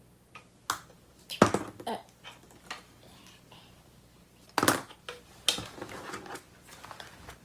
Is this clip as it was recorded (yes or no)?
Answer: yes